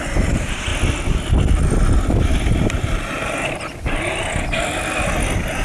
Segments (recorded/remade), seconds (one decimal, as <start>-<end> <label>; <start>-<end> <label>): 0.0-5.6 recorded